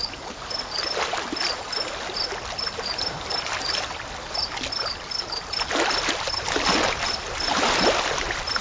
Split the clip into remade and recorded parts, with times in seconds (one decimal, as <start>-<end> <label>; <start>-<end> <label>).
0.0-8.6 recorded